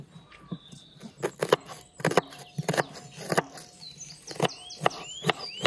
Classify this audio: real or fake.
real